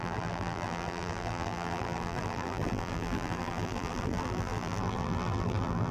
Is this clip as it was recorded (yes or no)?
no